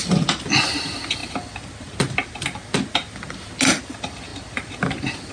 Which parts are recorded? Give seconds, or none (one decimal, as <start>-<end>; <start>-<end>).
0.0-5.3